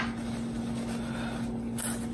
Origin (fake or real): real